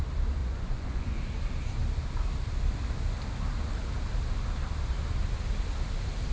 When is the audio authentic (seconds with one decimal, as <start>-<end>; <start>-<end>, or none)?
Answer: 0.0-0.4; 1.2-6.3